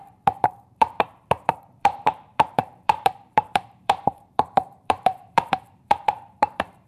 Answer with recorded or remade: remade